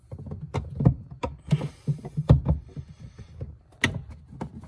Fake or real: real